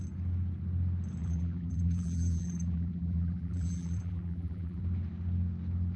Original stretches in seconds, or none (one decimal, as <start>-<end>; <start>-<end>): 0.0-1.2; 4.8-6.0